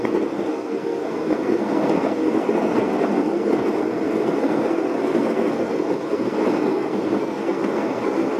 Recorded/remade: remade